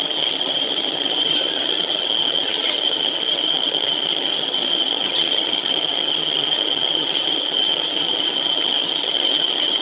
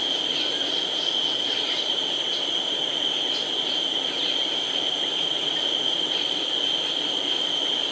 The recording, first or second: second